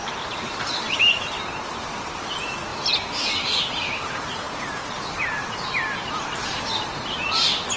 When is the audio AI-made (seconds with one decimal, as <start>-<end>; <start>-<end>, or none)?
none